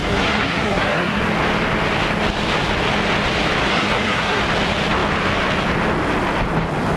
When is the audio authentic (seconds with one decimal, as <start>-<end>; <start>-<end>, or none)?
1.2-3.7; 4.4-7.0